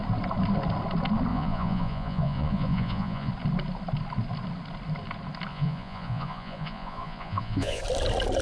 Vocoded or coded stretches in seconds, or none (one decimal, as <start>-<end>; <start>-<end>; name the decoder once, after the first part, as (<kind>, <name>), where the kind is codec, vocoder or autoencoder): 1.3-3.3 (vocoder, Vocos); 5.5-7.8